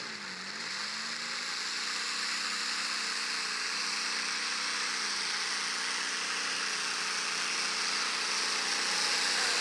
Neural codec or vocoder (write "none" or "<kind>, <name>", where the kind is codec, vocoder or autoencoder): none